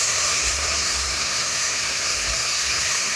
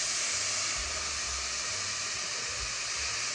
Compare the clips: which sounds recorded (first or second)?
second